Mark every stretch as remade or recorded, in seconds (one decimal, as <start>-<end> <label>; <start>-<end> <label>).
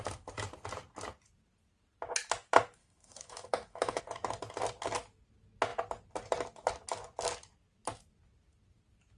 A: 0.0-2.8 recorded; 2.8-4.0 remade; 4.0-9.2 recorded